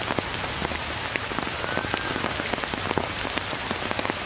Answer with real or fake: real